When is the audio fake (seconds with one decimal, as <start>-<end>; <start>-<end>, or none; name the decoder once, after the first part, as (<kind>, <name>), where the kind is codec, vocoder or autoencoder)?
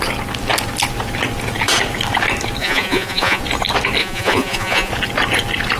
2.6-3.4 (vocoder, Vocos); 4.0-4.9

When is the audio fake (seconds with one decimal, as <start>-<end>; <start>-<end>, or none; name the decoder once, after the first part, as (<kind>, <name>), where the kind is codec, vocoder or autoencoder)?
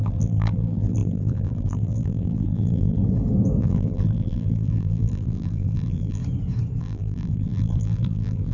0.0-3.0 (vocoder, BigVGAN v2); 3.6-6.2; 6.8-8.5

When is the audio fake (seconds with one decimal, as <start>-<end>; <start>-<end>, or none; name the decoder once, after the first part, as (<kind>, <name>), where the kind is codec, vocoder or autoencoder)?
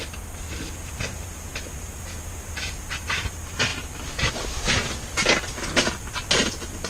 none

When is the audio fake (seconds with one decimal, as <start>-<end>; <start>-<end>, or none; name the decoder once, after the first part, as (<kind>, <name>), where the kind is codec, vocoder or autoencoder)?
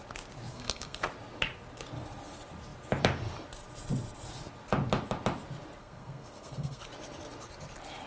0.5-1.0 (codec, SNAC); 5.8-6.8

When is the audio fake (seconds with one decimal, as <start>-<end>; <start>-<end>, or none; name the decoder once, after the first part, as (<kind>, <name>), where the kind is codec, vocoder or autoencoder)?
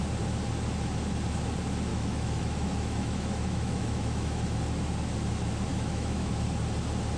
1.9-4.6 (autoencoder, DAC-VAE); 5.7-6.3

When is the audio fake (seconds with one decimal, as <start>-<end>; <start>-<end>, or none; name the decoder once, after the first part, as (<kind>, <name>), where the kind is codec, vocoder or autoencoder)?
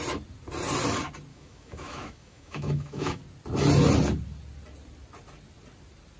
1.3-3.2 (autoencoder, DAC-VAE)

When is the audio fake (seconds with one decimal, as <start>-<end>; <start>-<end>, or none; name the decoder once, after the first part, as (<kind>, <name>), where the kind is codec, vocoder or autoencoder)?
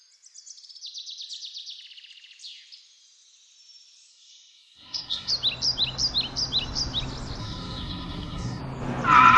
4.1-5.3 (codec, SNAC); 7.4-8.6